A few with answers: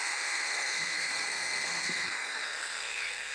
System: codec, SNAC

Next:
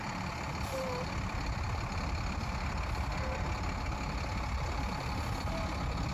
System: none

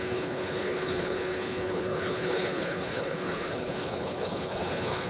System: codec, HILCodec